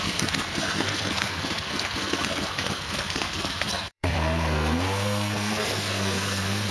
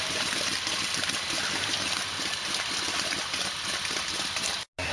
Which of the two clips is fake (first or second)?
first